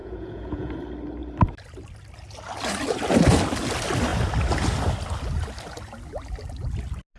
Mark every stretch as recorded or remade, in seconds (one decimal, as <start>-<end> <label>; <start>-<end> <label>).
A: 0.0-0.7 remade; 0.7-7.2 recorded

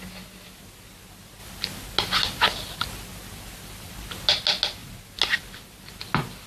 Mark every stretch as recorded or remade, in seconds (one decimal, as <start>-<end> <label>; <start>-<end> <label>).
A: 0.0-6.5 recorded

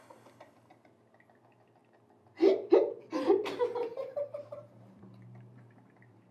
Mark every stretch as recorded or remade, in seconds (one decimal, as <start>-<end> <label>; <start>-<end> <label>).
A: 0.0-3.9 recorded; 3.9-6.3 remade

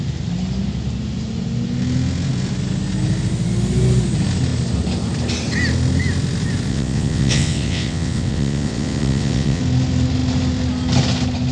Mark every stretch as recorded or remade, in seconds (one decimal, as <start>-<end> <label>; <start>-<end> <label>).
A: 0.0-6.7 recorded; 6.7-9.6 remade; 9.6-11.5 recorded

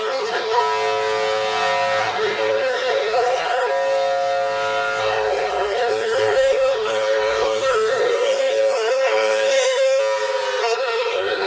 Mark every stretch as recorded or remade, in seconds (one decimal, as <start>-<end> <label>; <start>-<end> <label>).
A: 0.0-0.6 remade; 0.6-2.0 recorded; 2.0-3.7 remade; 3.7-5.0 recorded; 5.0-10.0 remade; 10.0-10.6 recorded; 10.6-11.5 remade

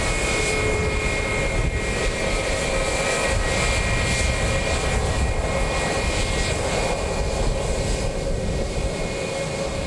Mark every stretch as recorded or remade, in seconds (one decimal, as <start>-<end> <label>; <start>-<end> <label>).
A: 0.0-9.9 recorded

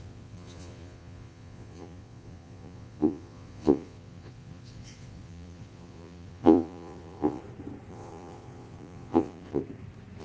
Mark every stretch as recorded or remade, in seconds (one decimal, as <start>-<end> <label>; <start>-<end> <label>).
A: 0.0-7.4 remade; 7.4-7.9 recorded; 7.9-9.6 remade; 9.6-10.2 recorded